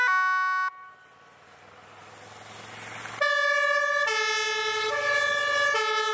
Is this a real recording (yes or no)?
yes